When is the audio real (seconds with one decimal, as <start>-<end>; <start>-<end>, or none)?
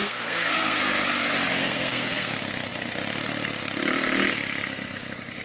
0.8-1.6; 2.3-5.4